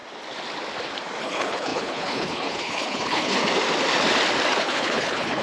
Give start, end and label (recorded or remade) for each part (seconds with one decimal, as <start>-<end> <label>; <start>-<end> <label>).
0.0-1.2 recorded; 1.2-3.4 remade; 3.4-4.6 recorded; 4.6-5.4 remade